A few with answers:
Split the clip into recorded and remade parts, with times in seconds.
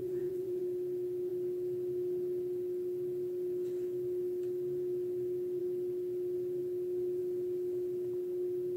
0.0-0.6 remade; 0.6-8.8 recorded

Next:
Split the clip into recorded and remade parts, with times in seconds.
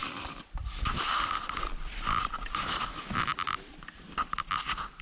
0.0-5.0 recorded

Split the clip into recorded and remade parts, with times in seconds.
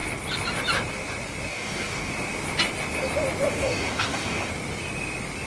0.0-1.5 recorded; 1.5-2.1 remade; 2.1-3.5 recorded; 3.5-4.5 remade; 4.5-5.5 recorded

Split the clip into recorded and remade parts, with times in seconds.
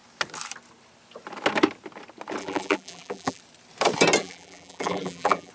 0.0-2.4 recorded; 2.4-3.4 remade; 3.4-4.2 recorded; 4.2-5.5 remade